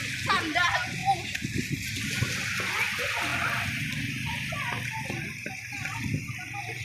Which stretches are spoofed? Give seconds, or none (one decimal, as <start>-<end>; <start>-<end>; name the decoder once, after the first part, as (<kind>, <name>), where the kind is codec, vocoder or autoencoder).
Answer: none